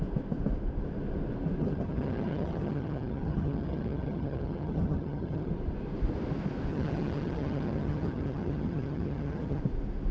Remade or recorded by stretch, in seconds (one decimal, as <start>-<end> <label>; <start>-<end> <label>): 0.0-1.6 recorded; 1.6-5.5 remade; 5.5-6.7 recorded; 6.7-9.6 remade; 9.6-10.1 recorded